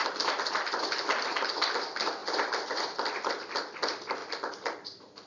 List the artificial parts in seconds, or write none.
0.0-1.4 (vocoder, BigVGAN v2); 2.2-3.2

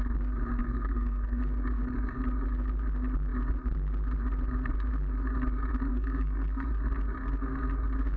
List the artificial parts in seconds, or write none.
0.6-1.4 (codec, SNAC); 5.9-6.7

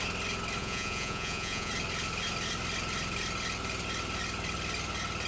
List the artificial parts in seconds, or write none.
0.6-1.7 (vocoder, Vocos)

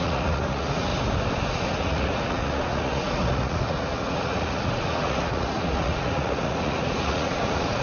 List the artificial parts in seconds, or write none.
0.0-0.9 (vocoder, Vocos); 1.5-7.8

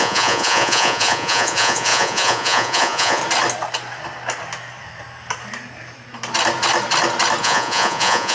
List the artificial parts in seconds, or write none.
0.0-3.2 (vocoder, Vocos); 7.4-8.3

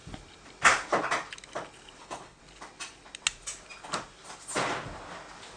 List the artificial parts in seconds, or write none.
2.0-2.4 (codec, HILCodec)

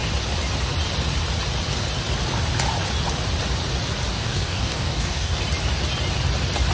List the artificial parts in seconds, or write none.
4.1-5.4 (codec, DAC)